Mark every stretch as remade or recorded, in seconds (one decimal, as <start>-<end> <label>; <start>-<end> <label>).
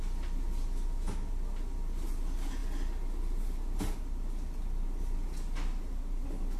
0.0-6.6 recorded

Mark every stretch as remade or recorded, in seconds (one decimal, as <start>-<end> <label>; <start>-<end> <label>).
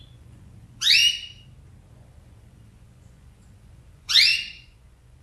0.0-1.0 remade; 1.0-1.9 recorded; 1.9-5.2 remade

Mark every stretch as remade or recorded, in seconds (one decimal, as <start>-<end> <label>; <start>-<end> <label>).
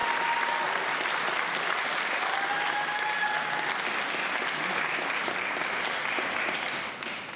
0.0-7.4 recorded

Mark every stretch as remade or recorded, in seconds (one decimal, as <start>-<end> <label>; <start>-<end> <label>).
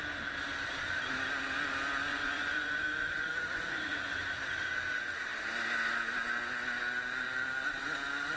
0.0-2.1 recorded; 2.1-4.1 remade; 4.1-8.4 recorded